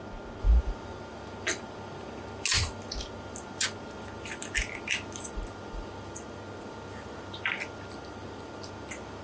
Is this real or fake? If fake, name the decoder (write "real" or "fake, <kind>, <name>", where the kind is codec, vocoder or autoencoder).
real